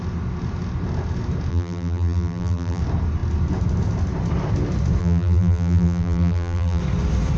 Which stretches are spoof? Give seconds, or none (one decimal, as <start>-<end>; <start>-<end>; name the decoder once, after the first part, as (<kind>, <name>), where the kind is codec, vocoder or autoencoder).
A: 1.5-2.8 (vocoder, BigVGAN v2); 5.0-6.8